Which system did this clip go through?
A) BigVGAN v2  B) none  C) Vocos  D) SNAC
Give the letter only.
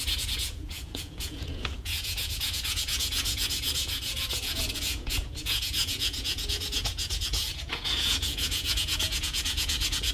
C